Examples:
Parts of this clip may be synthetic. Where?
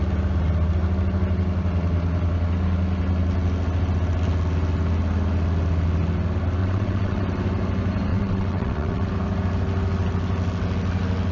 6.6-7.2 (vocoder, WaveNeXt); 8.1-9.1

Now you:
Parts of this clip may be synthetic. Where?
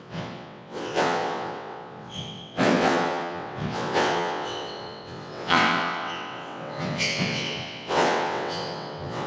0.0-9.3 (vocoder, WaveNeXt)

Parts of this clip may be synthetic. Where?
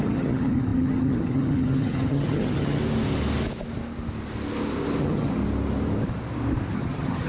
0.0-2.8 (vocoder, HiFi-GAN); 5.0-5.4; 6.7-7.3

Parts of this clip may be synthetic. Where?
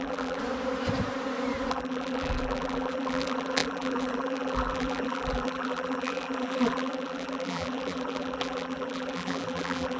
0.0-0.4 (vocoder, BigVGAN v2); 1.7-10.0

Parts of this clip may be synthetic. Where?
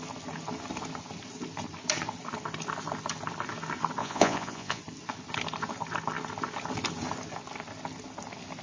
4.0-4.8 (vocoder, Vocos)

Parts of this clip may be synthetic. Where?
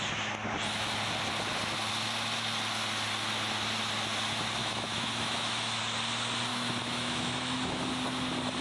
4.6-5.8 (autoencoder, DAC-VAE); 6.5-7.9